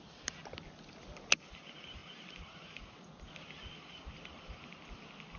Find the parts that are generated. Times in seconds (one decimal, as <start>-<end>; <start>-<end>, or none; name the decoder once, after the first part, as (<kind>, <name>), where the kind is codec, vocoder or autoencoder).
none